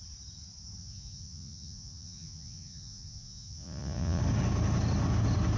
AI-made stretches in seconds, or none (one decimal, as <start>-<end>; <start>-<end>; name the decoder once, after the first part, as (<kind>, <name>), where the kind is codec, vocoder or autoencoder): 0.8-4.2 (vocoder, Vocos)

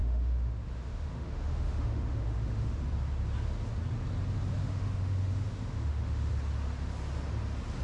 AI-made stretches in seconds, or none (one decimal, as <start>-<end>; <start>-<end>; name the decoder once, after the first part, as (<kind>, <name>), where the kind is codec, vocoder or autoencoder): 0.0-2.8 (autoencoder, DAC-VAE); 4.6-6.3

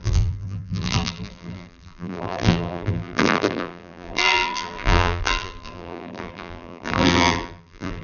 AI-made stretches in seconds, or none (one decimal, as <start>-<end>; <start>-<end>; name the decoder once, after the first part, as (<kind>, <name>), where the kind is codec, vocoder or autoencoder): 0.0-8.0 (vocoder, BigVGAN v2)

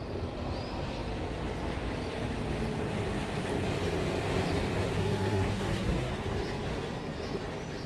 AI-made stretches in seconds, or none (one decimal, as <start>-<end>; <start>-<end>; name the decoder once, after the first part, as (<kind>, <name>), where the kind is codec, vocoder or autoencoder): 5.0-6.1 (codec, SNAC)